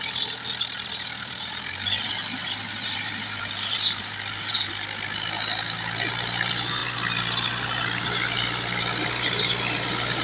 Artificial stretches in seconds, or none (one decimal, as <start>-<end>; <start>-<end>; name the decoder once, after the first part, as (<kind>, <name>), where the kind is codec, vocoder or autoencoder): 2.4-4.7 (vocoder, BigVGAN v2)